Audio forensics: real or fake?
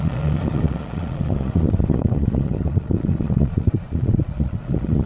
fake